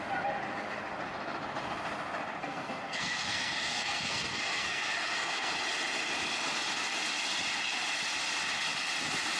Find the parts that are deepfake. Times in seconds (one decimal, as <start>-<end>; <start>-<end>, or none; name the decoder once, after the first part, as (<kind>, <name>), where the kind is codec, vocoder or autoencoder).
2.4-5.5 (codec, SNAC)